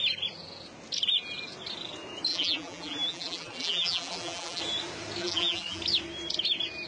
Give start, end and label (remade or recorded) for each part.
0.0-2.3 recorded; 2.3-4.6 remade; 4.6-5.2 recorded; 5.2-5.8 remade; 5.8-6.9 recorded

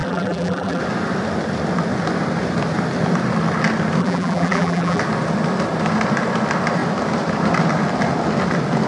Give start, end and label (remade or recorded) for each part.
0.0-0.8 remade; 0.8-4.0 recorded; 4.0-5.0 remade; 5.0-8.9 recorded

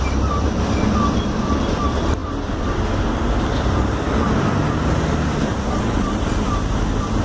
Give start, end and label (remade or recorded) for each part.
0.0-7.2 remade

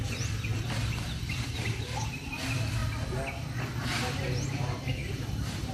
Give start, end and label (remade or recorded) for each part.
0.0-2.8 remade; 2.8-4.5 recorded; 4.5-5.7 remade